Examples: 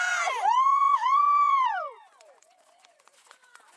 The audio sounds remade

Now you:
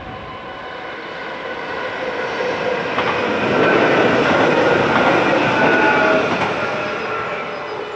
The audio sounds recorded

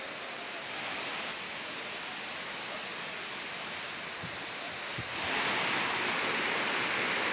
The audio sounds recorded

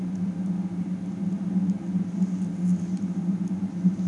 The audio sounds recorded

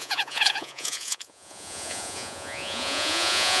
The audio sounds remade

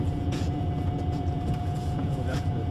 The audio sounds remade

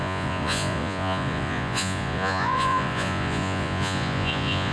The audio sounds remade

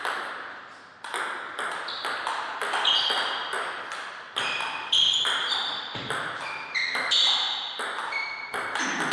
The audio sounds recorded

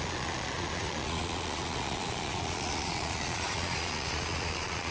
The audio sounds remade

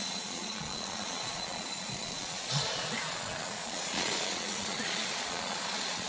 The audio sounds remade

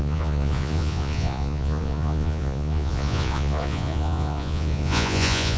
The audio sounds remade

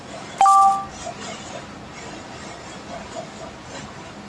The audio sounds recorded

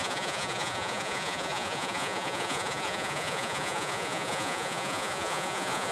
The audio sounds remade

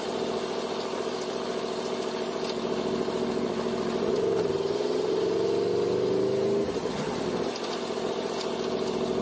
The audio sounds recorded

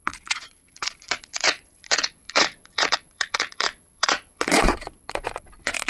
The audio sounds remade